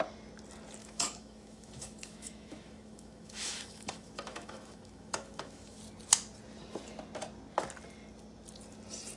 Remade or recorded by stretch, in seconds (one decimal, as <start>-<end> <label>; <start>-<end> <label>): 0.0-0.8 recorded; 0.8-5.8 remade; 5.8-9.2 recorded